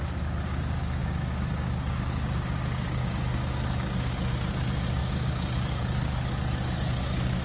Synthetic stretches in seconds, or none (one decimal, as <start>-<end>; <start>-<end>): 0.0-7.4